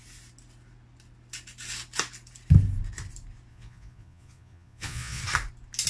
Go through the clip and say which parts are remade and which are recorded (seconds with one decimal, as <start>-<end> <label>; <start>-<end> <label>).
0.0-3.5 recorded; 3.5-5.2 remade; 5.2-5.9 recorded